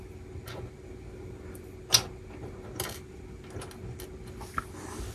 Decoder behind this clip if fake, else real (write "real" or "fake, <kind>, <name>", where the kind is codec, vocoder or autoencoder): real